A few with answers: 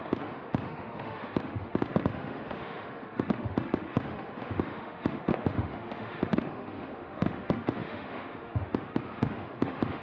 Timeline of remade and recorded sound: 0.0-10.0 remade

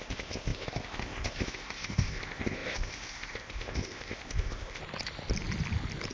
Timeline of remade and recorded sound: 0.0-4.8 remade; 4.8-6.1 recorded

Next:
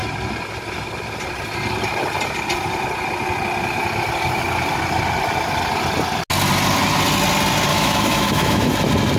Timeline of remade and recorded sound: 0.0-7.7 recorded; 7.7-8.7 remade; 8.7-9.2 recorded

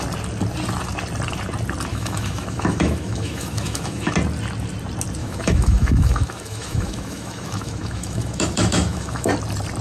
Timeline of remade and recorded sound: 0.0-1.9 recorded; 1.9-4.1 remade; 4.1-5.2 recorded; 5.2-9.3 remade; 9.3-9.8 recorded

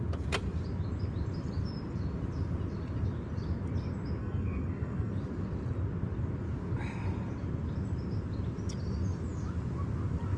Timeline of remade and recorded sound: 0.0-4.2 recorded; 4.2-5.1 remade; 5.1-10.4 recorded

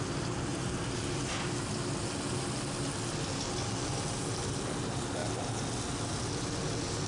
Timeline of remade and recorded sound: 0.0-7.1 recorded

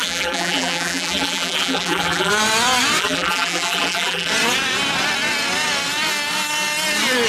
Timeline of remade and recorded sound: 0.0-2.3 remade; 2.3-3.0 recorded; 3.0-4.3 remade; 4.3-7.3 recorded

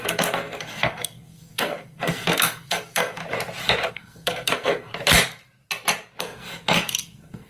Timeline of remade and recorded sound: 0.0-3.2 remade; 3.2-3.9 recorded; 3.9-4.9 remade; 4.9-6.2 recorded; 6.2-7.5 remade